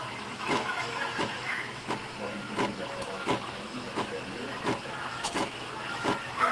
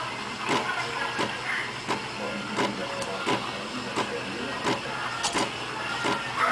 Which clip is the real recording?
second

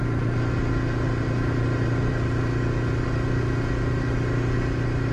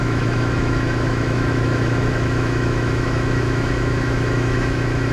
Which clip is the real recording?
first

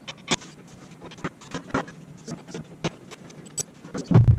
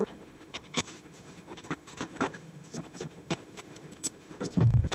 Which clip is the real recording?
first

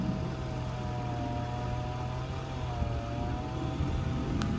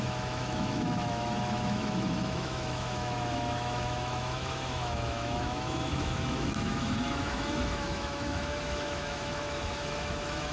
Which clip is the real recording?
first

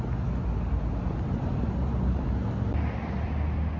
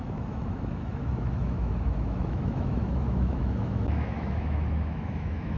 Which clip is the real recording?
first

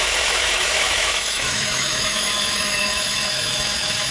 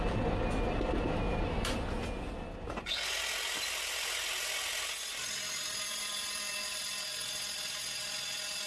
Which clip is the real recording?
second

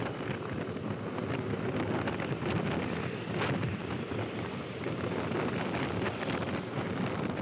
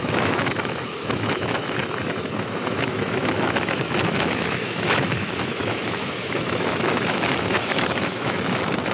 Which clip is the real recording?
first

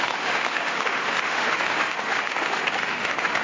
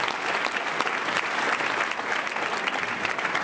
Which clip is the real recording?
second